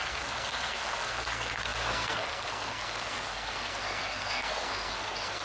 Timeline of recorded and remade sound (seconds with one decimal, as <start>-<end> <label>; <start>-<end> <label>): 0.0-5.4 remade